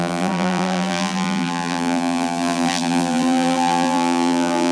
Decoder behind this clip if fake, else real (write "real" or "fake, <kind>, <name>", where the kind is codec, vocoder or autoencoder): fake, vocoder, BigVGAN v2